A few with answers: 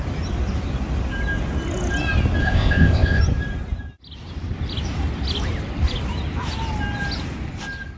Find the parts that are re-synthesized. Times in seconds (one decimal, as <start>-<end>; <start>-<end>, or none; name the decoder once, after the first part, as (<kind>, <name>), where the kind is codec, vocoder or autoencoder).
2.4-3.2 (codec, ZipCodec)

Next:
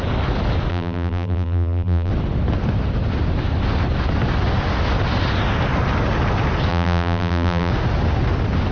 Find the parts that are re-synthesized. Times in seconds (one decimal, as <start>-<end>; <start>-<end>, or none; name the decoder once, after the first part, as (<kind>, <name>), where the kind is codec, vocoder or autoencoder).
0.7-2.1 (vocoder, BigVGAN v2); 6.7-7.7

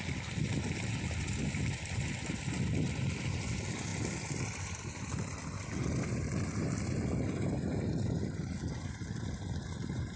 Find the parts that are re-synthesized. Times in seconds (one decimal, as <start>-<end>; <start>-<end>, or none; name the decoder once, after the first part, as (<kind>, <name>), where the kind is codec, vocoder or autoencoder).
none

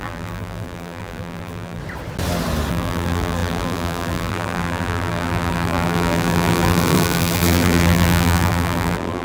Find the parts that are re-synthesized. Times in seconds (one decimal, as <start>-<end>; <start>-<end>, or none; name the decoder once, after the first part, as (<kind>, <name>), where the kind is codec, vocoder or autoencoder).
0.0-1.8 (vocoder, BigVGAN v2); 2.7-9.2

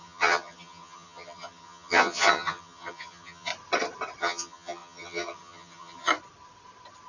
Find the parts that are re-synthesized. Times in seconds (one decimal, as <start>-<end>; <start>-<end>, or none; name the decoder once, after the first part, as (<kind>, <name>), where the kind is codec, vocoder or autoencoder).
0.0-3.5 (vocoder, HiFi-GAN); 4.2-6.1

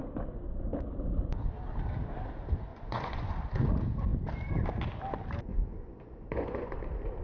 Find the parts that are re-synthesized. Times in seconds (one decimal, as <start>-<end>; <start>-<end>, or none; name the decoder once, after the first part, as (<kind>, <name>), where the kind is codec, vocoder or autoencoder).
2.7-3.4 (vocoder, Vocos); 5.5-6.7